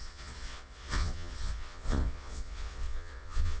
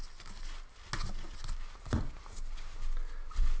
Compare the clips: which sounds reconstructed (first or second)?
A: first